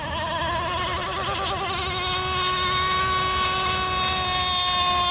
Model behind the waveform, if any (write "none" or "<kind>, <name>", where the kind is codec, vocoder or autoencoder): none